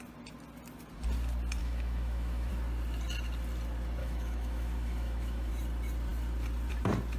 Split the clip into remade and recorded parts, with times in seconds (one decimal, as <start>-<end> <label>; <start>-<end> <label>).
0.0-1.6 recorded; 1.6-2.5 remade; 2.5-4.0 recorded; 4.0-5.5 remade; 5.5-7.2 recorded

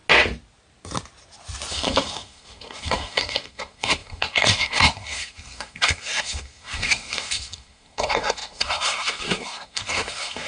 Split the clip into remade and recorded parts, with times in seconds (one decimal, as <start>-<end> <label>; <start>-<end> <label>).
0.0-1.7 recorded; 1.7-10.5 remade

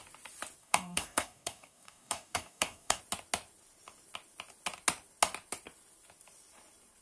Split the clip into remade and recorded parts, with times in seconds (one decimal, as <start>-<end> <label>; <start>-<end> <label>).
0.0-0.6 recorded; 0.6-3.0 remade; 3.0-7.0 recorded

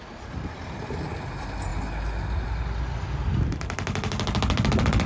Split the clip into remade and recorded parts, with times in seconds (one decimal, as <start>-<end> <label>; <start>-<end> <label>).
0.0-5.1 recorded

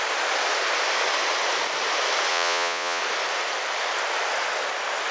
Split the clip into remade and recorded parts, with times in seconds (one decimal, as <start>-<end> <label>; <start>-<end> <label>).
0.0-2.3 recorded; 2.3-3.0 remade; 3.0-5.1 recorded

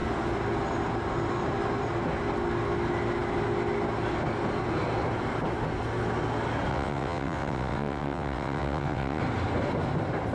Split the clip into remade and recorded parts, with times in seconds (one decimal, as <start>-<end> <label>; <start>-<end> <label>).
0.0-6.7 recorded; 6.7-9.2 remade; 9.2-10.3 recorded